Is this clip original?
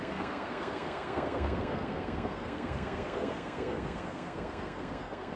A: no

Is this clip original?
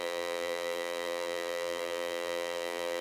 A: no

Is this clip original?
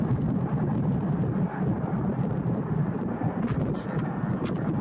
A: yes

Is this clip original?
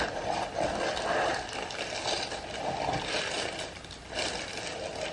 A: yes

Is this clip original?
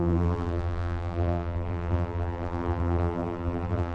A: no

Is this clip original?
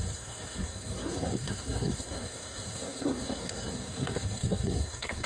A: no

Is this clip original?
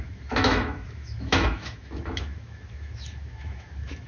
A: no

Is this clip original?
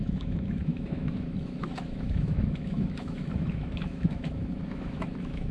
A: no